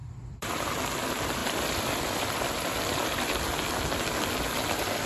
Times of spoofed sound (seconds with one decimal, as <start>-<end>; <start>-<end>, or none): 0.0-0.7; 1.4-2.8